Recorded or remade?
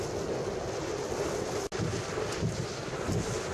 recorded